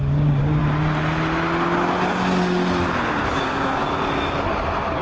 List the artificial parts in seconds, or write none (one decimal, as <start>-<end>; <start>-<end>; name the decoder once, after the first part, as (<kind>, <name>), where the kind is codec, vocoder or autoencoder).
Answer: 0.0-0.6 (codec, DAC); 3.4-3.8